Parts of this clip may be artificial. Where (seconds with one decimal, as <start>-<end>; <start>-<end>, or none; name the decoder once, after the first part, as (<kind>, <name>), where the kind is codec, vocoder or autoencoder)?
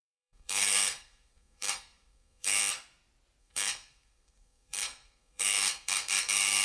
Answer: 0.0-2.6 (codec, SNAC); 3.4-6.6